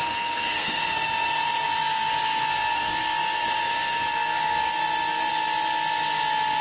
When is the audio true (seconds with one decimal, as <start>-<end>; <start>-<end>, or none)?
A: 5.3-6.6